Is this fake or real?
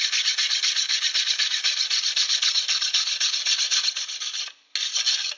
real